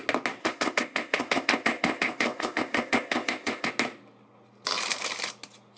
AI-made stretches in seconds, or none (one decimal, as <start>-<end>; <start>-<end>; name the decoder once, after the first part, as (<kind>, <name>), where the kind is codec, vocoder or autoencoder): 0.4-3.7 (codec, ZipCodec)